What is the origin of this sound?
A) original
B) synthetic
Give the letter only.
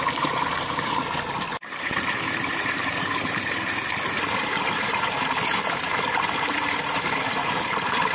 B